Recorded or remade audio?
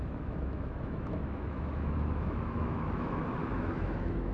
remade